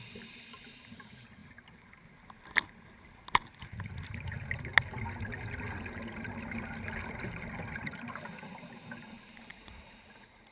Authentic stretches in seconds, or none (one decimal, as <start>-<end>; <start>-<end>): 0.0-9.5

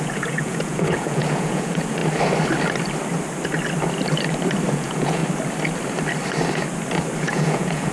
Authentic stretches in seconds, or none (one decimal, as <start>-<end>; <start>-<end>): 2.0-4.7; 5.2-7.2

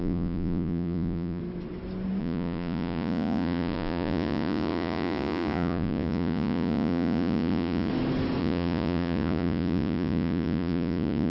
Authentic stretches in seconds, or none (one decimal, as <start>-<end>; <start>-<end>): 1.4-2.2; 7.9-8.4

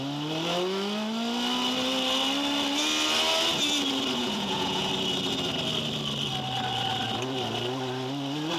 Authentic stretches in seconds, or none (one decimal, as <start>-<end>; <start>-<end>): 0.0-4.2; 4.9-8.6